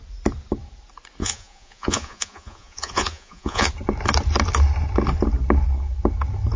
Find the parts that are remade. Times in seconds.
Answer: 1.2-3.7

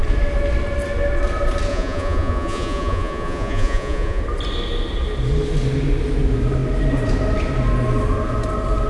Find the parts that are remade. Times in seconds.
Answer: 1.7-4.2

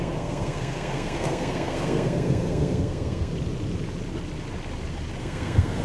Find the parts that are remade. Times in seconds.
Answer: 0.0-3.3; 5.2-5.8